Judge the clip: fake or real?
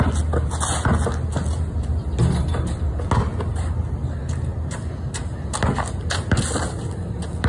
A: real